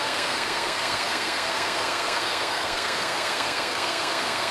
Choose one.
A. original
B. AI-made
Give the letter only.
B